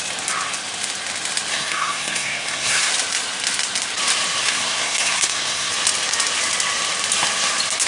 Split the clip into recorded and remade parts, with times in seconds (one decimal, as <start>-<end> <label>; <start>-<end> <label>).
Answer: 0.0-1.5 recorded; 1.5-2.9 remade; 2.9-4.4 recorded; 4.4-5.7 remade; 5.7-7.9 recorded